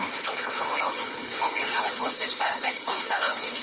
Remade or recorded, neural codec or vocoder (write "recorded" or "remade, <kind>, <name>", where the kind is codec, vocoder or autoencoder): remade, codec, HILCodec